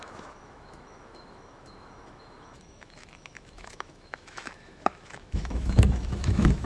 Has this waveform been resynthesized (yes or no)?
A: yes